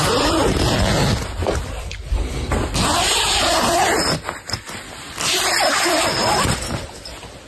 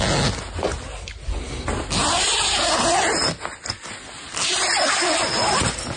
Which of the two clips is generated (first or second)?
first